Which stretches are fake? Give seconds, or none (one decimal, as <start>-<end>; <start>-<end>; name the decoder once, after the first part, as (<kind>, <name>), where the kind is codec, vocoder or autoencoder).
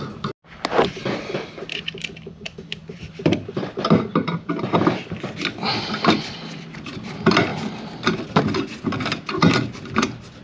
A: none